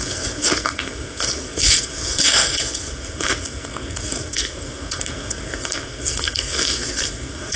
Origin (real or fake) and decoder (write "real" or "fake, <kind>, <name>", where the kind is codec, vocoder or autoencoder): fake, codec, SNAC